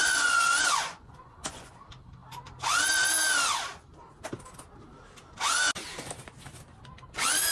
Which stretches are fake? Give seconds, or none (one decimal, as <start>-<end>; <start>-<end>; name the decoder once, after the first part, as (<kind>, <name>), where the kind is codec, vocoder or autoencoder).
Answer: 0.0-1.7 (vocoder, Vocos)